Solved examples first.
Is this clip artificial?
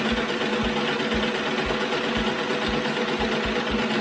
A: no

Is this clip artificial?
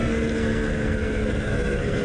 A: yes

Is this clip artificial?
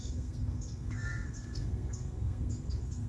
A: yes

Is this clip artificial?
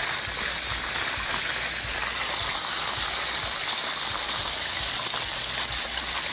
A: no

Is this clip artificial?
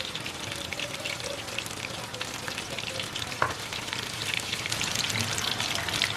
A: no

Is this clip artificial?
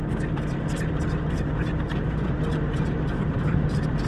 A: no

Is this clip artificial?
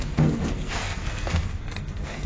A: yes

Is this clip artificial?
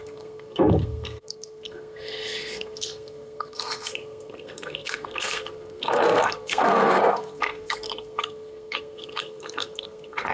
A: yes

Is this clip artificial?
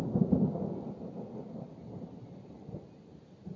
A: no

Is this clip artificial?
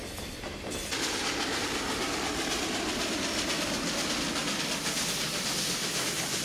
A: no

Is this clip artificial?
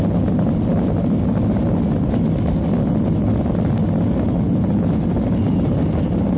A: no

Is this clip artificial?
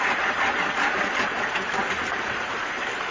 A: no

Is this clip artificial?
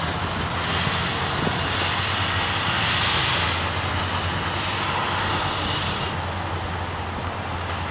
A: no